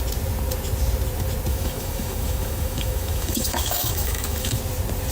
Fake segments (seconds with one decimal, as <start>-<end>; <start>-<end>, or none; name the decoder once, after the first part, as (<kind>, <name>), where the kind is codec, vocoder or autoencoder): 1.5-4.6 (autoencoder, DAC-VAE)